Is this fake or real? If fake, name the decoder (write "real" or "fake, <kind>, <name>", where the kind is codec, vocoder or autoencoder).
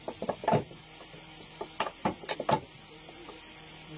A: real